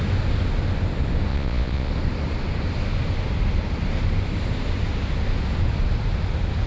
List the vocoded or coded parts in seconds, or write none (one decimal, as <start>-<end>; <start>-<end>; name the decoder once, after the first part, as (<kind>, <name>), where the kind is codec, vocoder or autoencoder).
1.3-1.9 (vocoder, Vocos)